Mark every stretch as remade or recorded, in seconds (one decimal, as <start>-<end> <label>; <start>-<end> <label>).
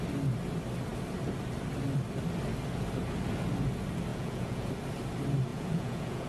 0.0-4.1 recorded; 4.1-4.7 remade; 4.7-5.5 recorded; 5.5-6.3 remade